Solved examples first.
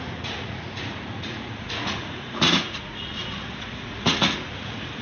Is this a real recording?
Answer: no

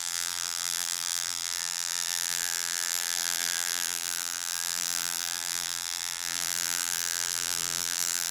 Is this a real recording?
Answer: no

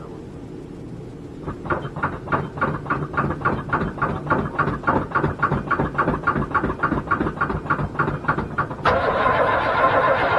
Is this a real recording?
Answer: yes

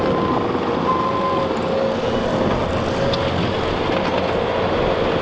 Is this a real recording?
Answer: yes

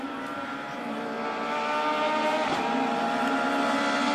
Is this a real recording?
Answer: yes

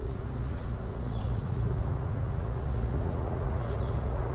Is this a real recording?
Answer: no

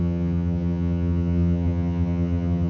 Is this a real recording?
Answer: no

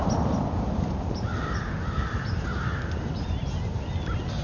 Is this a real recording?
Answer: yes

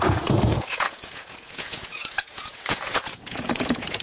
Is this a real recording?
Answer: no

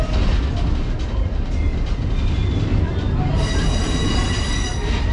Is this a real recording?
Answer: yes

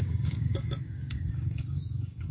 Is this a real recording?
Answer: no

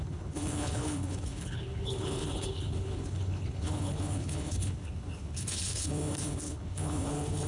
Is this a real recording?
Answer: no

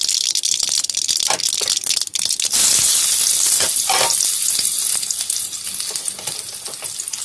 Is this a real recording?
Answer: yes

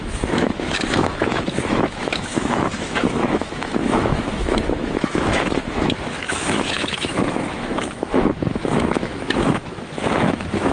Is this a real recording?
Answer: no